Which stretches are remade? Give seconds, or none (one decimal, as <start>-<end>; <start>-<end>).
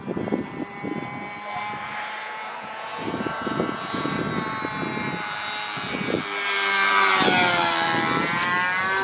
1.8-4.2